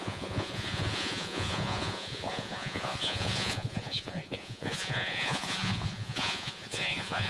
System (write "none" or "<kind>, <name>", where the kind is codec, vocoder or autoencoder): vocoder, Vocos